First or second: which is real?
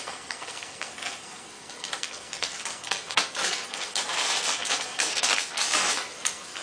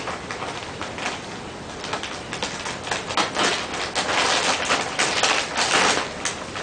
second